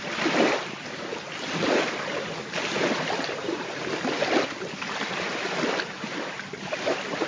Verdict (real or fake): real